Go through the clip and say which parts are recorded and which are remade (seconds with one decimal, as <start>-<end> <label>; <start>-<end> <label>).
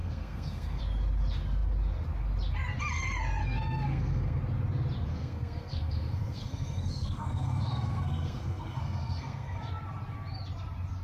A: 0.0-0.8 remade; 0.8-3.4 recorded; 3.4-4.4 remade; 4.4-5.1 recorded; 5.1-9.7 remade; 9.7-11.0 recorded